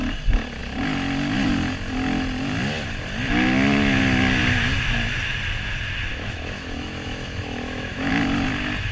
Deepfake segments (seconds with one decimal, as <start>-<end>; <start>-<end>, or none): 6.1-8.1